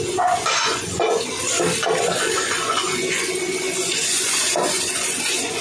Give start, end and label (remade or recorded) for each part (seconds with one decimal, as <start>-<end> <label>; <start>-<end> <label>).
0.0-1.3 remade; 1.3-2.0 recorded; 2.0-5.6 remade